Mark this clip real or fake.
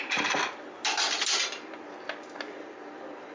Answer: real